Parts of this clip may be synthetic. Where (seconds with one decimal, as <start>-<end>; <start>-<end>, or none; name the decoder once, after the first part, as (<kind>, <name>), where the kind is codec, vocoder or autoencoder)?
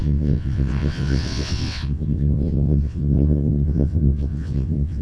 0.0-5.0 (vocoder, WaveNeXt)